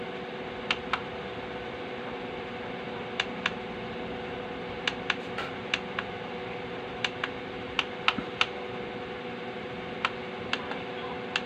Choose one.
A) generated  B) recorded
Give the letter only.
B